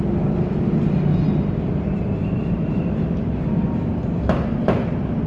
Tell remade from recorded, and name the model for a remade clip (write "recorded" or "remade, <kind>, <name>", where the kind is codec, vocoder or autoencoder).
remade, vocoder, BigVGAN v2